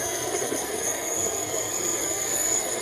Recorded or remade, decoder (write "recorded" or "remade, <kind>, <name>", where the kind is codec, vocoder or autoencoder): remade, codec, SNAC